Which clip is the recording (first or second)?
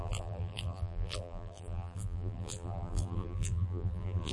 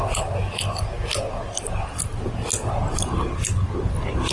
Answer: second